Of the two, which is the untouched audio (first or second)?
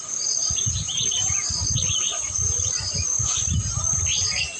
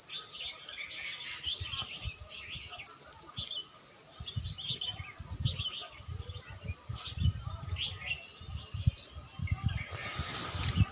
second